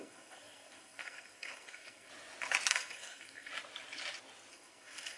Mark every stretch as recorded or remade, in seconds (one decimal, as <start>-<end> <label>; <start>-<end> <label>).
0.0-2.1 remade; 2.1-2.7 recorded; 2.7-3.5 remade; 3.5-4.5 recorded; 4.5-5.2 remade